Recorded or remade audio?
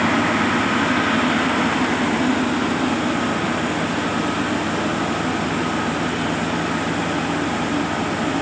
recorded